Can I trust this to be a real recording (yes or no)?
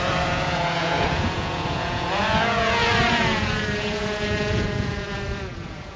no